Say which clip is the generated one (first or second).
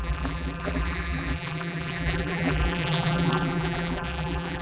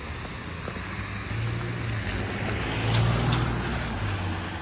first